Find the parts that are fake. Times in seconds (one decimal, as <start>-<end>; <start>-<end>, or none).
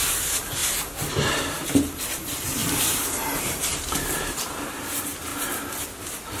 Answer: 0.0-2.6; 3.4-5.3; 6.0-6.4